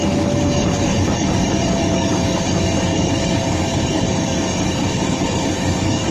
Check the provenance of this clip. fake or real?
fake